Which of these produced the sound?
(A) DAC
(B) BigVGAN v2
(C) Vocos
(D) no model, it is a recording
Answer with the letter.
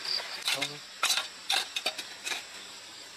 B